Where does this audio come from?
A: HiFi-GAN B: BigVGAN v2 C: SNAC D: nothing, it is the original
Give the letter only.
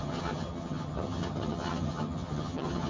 A